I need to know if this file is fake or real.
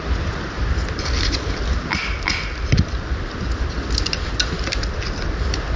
real